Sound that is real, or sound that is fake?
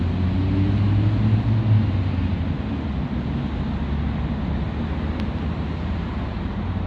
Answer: real